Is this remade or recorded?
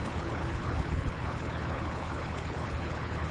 remade